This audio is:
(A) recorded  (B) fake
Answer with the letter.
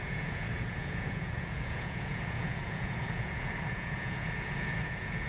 B